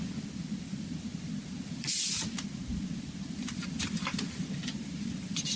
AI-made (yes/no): no